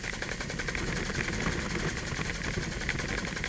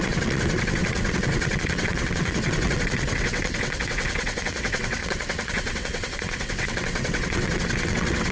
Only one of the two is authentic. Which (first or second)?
first